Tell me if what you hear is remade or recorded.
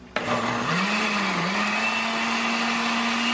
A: recorded